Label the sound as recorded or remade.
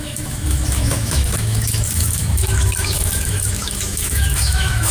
remade